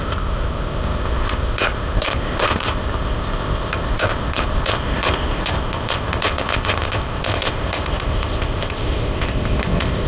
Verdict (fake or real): fake